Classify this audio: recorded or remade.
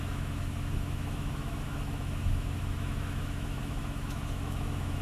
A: remade